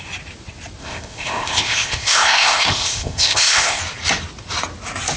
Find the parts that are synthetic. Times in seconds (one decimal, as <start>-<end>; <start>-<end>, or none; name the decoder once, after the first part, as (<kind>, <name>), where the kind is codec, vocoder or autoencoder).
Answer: 0.8-3.8 (codec, ZipCodec)